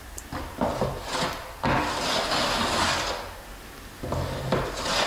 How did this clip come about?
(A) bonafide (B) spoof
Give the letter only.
A